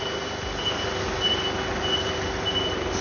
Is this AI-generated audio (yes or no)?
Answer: no